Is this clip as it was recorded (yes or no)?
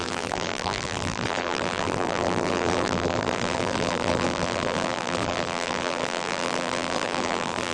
no